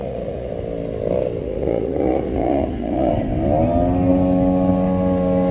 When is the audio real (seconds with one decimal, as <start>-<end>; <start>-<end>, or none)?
0.5-1.4; 3.1-5.5